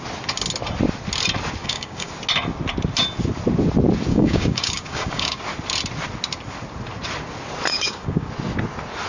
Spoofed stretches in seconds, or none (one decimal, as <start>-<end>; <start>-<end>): 1.6-2.1; 4.1-5.4; 7.7-8.3

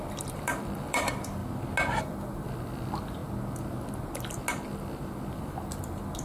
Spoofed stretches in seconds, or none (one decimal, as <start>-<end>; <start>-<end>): 0.0-1.4; 2.0-3.2; 5.3-6.2

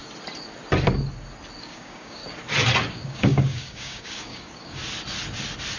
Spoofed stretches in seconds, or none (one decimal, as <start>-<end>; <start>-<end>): 1.6-2.2; 2.9-4.8

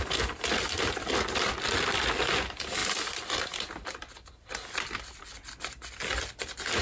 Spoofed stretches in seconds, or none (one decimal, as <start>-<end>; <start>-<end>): none

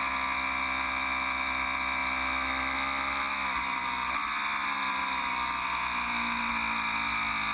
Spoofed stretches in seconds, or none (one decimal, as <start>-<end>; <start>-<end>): none

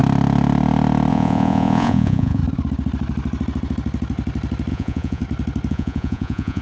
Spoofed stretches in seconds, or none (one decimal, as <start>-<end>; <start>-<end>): 1.1-2.4; 4.7-5.2; 5.7-6.6

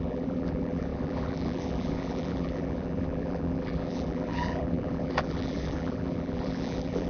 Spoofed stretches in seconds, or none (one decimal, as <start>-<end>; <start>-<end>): 0.0-7.1